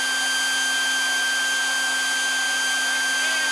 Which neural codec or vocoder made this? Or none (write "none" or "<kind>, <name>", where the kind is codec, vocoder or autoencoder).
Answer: none